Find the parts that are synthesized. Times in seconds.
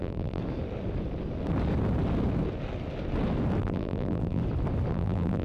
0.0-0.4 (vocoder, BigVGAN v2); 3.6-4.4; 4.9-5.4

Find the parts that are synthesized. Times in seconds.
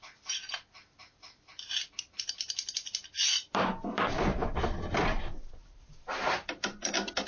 5.6-7.3 (vocoder, BigVGAN v2)